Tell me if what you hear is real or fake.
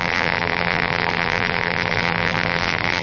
fake